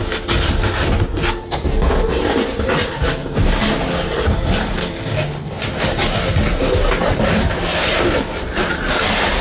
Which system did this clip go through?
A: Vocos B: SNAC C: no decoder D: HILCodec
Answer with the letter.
C